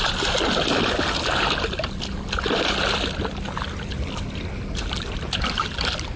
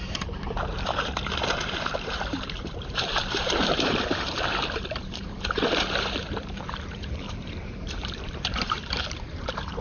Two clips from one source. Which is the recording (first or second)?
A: first